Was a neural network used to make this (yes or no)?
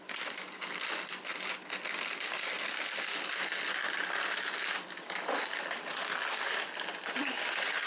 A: no